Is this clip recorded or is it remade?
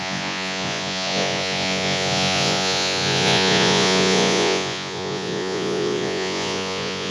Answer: remade